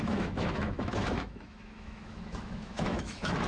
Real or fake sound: fake